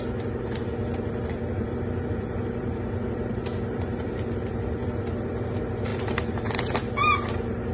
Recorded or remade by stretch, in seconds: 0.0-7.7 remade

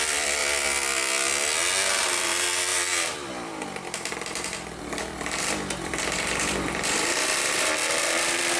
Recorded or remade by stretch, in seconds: 0.0-0.4 remade; 0.4-2.2 recorded; 2.2-8.6 remade

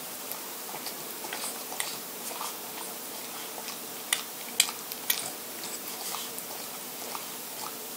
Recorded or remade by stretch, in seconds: 0.0-3.2 remade; 3.2-5.8 recorded; 5.8-8.0 remade

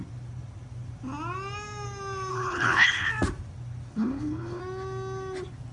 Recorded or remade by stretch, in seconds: 0.0-2.3 recorded; 2.3-3.1 remade; 3.1-3.9 recorded; 3.9-4.6 remade; 4.6-5.7 recorded

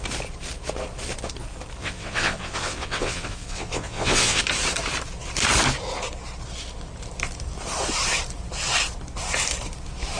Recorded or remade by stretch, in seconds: 0.0-1.8 recorded; 1.8-4.4 remade; 4.4-10.2 recorded